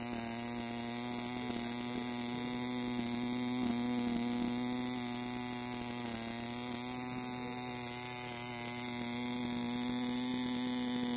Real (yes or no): yes